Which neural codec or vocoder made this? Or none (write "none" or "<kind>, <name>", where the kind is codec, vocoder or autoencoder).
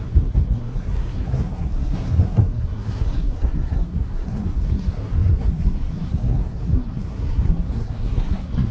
codec, SNAC